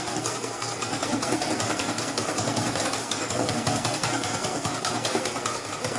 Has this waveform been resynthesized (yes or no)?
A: yes